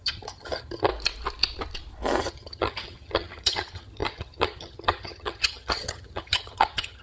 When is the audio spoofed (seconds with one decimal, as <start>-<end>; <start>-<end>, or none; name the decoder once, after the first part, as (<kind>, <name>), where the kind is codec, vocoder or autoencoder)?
0.0-0.9 (vocoder, HiFi-GAN); 2.2-7.0